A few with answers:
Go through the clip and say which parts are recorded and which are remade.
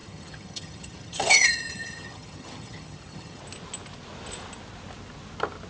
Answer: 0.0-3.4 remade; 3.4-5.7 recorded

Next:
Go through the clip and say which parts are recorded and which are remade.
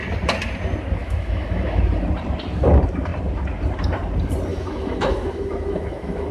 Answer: 0.0-1.0 recorded; 1.0-1.8 remade; 1.8-4.5 recorded; 4.5-6.3 remade